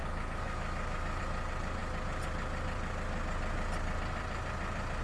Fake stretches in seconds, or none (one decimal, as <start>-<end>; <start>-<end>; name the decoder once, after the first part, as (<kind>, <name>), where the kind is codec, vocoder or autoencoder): 0.0-1.2 (autoencoder, DAC-VAE)